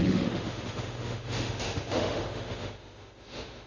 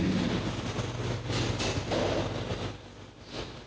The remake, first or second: first